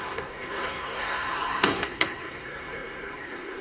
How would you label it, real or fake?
fake